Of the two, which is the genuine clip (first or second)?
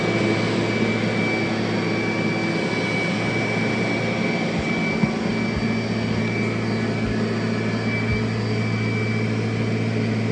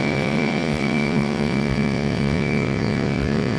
first